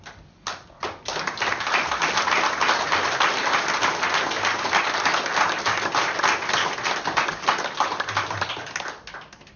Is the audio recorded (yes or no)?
yes